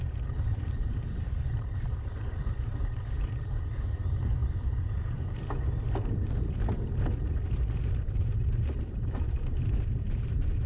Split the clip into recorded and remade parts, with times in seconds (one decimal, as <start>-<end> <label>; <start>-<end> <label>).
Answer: 0.0-10.7 remade